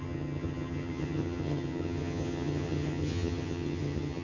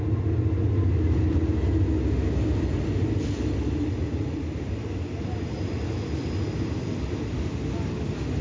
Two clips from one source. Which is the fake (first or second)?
first